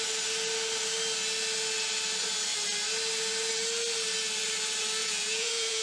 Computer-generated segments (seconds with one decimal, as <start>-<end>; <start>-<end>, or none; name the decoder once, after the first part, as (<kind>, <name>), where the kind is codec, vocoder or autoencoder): 5.0-5.8 (vocoder, Vocos)